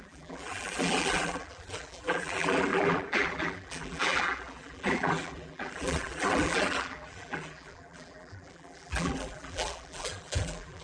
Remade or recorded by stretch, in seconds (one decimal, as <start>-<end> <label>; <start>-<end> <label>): 0.0-10.8 remade